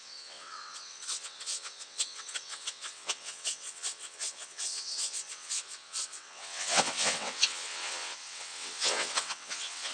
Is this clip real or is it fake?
fake